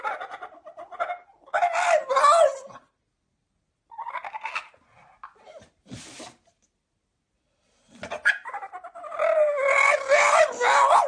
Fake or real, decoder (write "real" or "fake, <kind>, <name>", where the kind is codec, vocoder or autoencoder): real